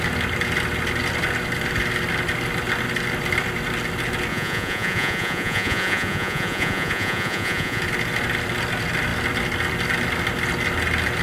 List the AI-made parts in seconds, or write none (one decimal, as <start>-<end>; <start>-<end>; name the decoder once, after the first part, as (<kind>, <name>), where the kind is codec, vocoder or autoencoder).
4.3-7.8 (vocoder, Vocos)